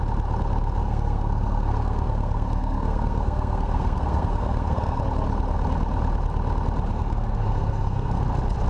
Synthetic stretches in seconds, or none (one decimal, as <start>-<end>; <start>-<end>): 0.8-5.0; 6.9-8.2